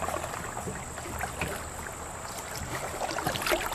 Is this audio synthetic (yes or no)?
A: no